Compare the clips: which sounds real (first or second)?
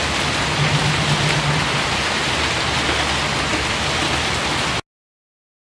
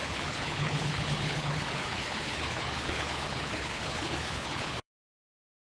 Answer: first